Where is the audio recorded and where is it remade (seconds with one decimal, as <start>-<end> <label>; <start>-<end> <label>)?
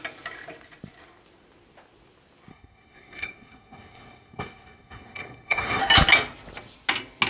0.0-2.5 recorded; 2.5-5.8 remade; 5.8-7.3 recorded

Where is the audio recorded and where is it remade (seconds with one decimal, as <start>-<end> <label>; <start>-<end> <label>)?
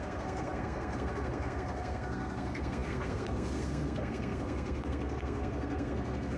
0.0-6.4 remade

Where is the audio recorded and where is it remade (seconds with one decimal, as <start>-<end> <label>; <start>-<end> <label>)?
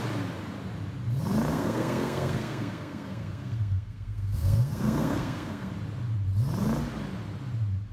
0.0-1.5 recorded; 1.5-5.7 remade; 5.7-7.9 recorded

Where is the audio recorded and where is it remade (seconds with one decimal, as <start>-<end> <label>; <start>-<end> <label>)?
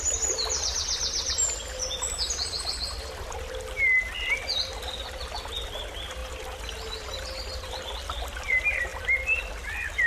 0.0-10.1 recorded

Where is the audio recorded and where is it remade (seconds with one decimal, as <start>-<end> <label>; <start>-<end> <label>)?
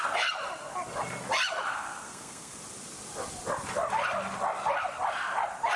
0.0-1.7 recorded; 1.7-2.6 remade; 2.6-5.8 recorded